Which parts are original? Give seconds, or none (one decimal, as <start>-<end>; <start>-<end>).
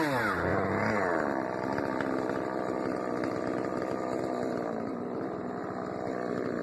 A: 0.0-6.6